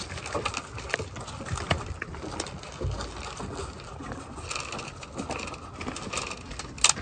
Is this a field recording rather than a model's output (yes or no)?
yes